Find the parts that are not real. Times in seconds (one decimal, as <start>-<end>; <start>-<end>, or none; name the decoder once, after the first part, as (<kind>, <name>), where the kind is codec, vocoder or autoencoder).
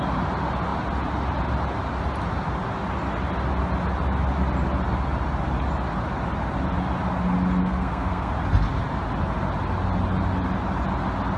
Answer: 7.6-8.3 (codec, SNAC)